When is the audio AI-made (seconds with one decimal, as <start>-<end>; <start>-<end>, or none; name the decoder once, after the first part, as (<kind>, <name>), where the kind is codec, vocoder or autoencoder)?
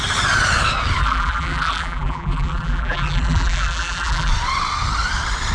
1.0-4.3 (vocoder, BigVGAN v2)